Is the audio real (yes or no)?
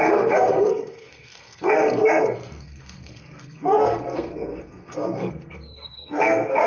no